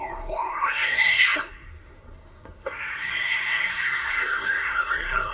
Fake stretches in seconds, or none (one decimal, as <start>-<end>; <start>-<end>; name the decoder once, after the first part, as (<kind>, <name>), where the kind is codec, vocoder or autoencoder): 0.0-5.3 (codec, SNAC)